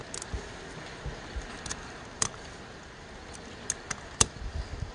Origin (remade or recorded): recorded